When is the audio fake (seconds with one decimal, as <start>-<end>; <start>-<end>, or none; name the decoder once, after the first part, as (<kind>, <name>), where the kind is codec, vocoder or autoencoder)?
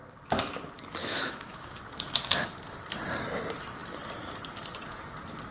1.0-1.8 (autoencoder, DAC-VAE)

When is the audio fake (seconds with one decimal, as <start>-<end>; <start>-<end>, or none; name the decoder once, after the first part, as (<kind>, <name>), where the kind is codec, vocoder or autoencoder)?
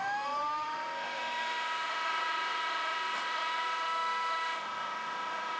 0.0-5.6 (autoencoder, DAC-VAE)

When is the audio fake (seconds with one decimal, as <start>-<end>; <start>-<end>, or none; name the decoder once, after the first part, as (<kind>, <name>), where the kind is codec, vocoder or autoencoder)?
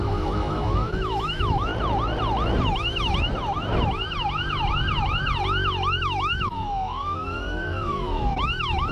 0.0-1.7 (autoencoder, DAC-VAE); 6.0-8.9